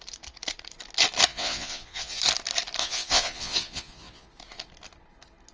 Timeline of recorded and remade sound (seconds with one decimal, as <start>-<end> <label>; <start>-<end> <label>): 0.0-1.3 recorded; 1.3-2.2 remade; 2.2-2.8 recorded; 2.8-4.3 remade; 4.3-5.5 recorded